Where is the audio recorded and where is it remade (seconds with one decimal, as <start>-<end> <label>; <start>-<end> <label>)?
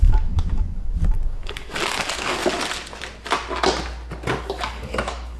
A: 0.0-2.4 remade; 2.4-4.4 recorded; 4.4-5.4 remade